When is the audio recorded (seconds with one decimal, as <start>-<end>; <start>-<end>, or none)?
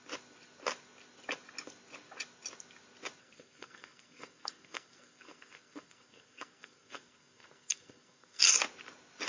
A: 0.0-3.2; 8.4-9.3